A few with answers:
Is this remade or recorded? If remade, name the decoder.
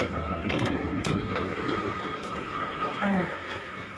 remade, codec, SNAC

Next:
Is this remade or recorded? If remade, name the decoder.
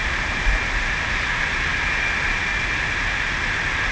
recorded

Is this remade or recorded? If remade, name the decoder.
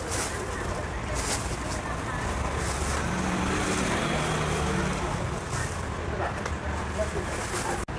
recorded